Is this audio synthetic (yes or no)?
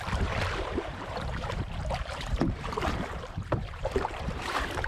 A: yes